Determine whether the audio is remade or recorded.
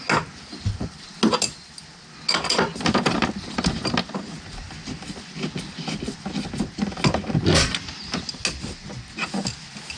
recorded